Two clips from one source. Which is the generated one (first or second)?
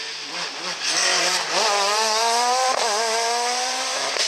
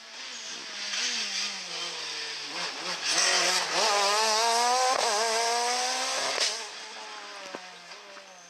first